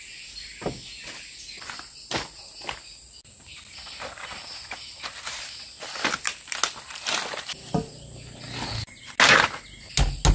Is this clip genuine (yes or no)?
yes